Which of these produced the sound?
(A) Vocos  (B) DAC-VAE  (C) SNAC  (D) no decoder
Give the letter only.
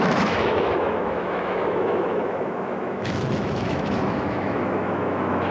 B